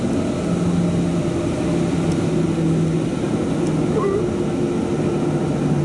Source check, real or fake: real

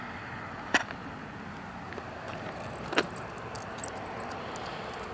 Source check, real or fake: real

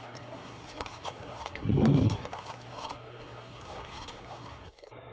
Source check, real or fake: fake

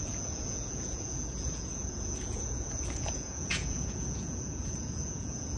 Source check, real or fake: fake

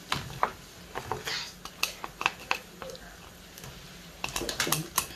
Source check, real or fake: real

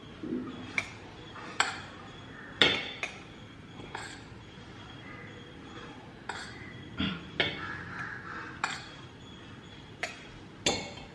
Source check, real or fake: real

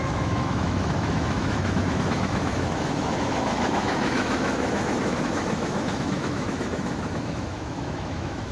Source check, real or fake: fake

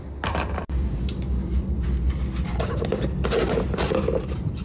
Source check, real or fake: real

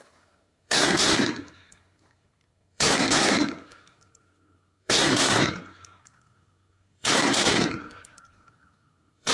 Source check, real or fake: fake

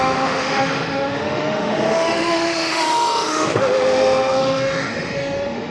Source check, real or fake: fake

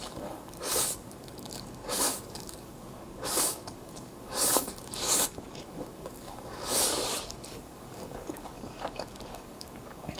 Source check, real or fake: fake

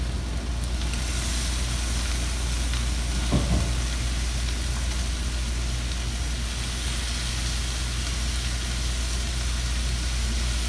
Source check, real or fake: real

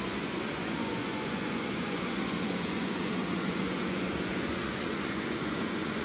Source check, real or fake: fake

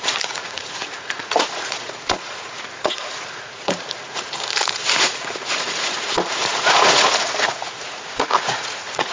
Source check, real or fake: fake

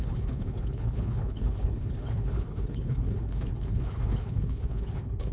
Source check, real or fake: fake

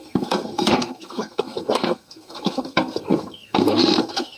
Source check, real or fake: fake